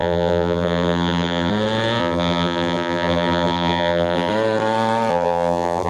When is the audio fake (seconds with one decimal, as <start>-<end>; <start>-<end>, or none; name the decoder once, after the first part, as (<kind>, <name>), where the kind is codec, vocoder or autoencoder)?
0.0-1.5 (vocoder, BigVGAN v2); 2.0-4.3; 5.1-5.9